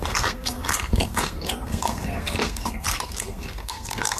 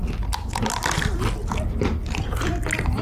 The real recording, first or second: second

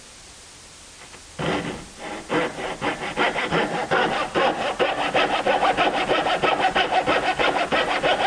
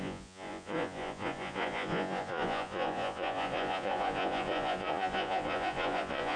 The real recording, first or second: first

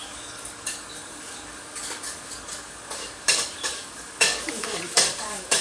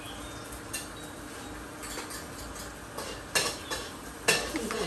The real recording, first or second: second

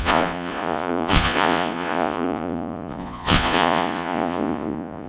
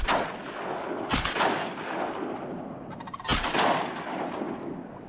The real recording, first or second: second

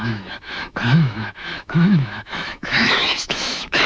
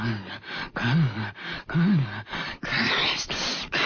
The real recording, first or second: second